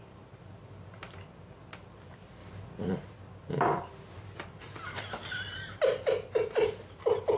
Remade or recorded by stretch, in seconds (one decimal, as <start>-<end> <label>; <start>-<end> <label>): 0.0-7.4 recorded